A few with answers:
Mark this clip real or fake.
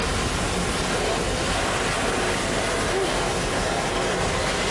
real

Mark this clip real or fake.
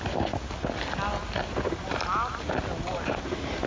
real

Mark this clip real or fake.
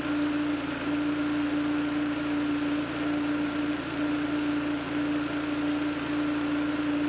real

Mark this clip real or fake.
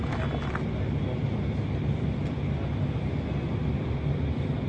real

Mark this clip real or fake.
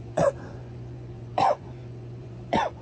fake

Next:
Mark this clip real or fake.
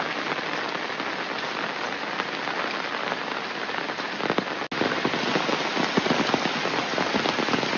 real